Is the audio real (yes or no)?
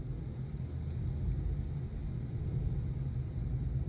yes